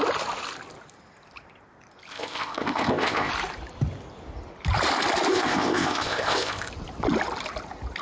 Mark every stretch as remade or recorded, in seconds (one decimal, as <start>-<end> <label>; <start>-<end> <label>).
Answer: 0.0-2.1 recorded; 2.1-3.3 remade; 3.3-5.3 recorded; 5.3-6.7 remade; 6.7-8.0 recorded